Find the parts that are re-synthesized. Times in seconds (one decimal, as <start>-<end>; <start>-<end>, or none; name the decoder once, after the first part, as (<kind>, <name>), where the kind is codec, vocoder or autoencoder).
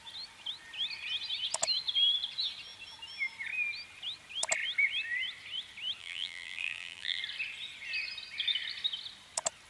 6.0-7.2 (vocoder, BigVGAN v2)